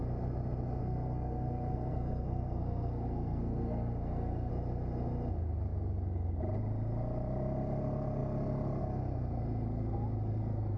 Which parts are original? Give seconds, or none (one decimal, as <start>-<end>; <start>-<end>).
0.0-0.8; 4.5-10.8